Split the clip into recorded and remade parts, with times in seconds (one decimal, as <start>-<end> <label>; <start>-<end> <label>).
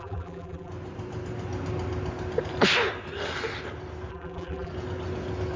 0.0-0.7 remade; 0.7-4.1 recorded; 4.1-4.7 remade; 4.7-5.6 recorded